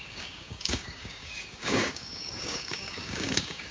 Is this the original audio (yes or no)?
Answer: no